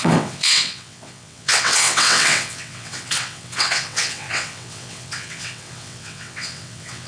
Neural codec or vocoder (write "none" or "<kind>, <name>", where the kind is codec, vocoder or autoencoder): vocoder, WaveNeXt